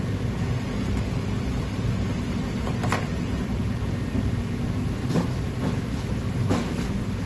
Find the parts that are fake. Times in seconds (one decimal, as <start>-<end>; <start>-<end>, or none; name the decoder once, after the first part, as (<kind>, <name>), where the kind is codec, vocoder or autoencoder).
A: none